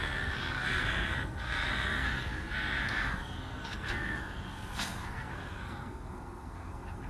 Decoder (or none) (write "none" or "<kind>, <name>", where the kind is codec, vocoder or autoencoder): codec, SNAC